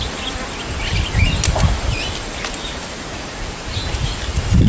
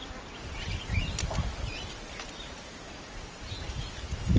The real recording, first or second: first